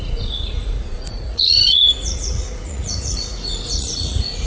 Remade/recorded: remade